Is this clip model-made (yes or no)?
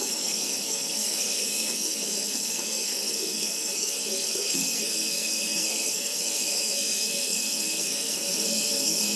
yes